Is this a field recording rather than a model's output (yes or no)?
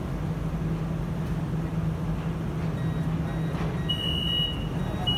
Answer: yes